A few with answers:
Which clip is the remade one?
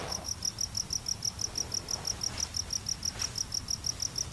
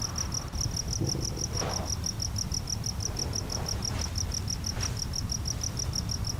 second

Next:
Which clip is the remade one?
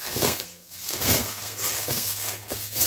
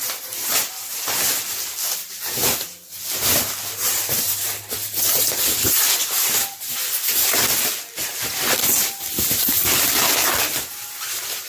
first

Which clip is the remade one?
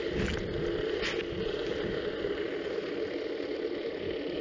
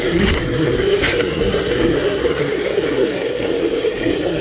second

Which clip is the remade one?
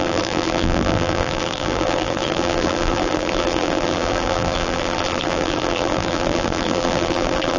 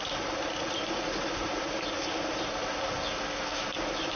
first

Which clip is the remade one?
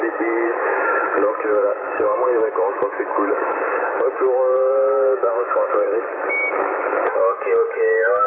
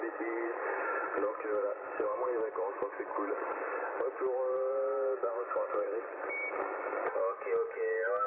first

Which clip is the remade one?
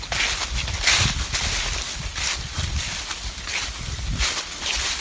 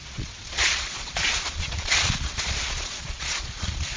second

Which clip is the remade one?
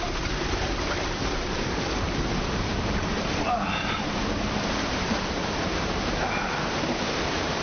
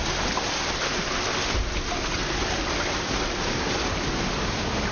first